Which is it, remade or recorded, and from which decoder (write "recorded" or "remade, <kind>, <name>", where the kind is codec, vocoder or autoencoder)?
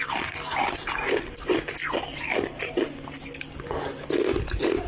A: recorded